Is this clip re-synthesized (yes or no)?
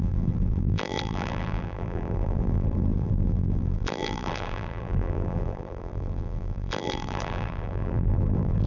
yes